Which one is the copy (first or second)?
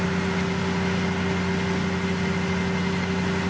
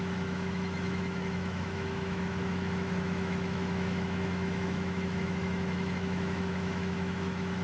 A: second